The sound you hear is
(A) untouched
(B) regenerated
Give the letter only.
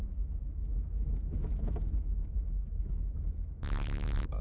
B